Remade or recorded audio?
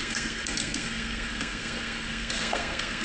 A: remade